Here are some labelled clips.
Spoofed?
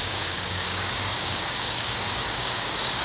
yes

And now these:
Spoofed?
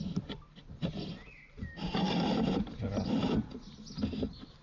no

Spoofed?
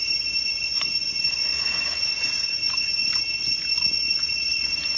no